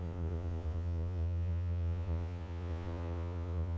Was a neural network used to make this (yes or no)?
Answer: yes